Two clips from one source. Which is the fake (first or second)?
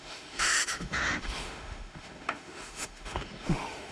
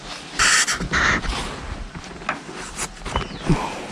first